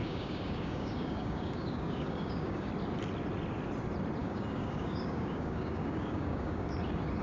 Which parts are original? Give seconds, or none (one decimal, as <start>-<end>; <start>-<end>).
2.7-4.2; 6.7-7.2